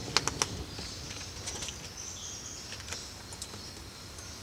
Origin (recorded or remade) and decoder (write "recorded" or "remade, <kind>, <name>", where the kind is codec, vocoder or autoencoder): recorded